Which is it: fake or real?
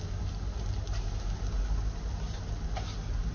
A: real